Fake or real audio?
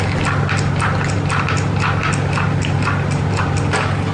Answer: fake